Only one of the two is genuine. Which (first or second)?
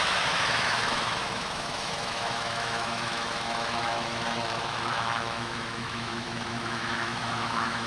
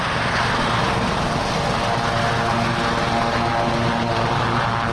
second